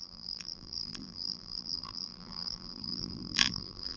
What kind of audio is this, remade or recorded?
remade